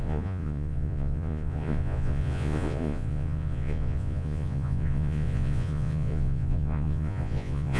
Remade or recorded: remade